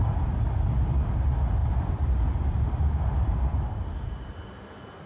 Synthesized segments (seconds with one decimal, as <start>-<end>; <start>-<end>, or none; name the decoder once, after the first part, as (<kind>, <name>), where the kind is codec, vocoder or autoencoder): 1.6-5.1 (vocoder, BigVGAN v2)